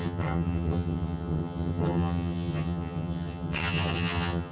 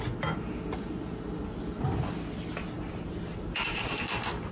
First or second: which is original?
second